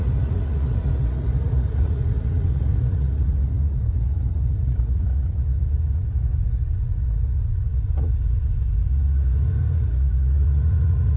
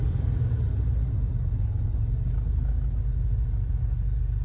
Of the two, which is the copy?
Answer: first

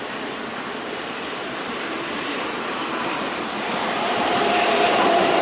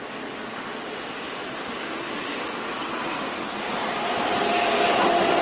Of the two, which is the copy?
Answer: first